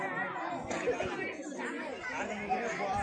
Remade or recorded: recorded